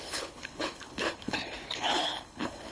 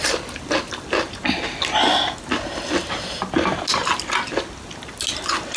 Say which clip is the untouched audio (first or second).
second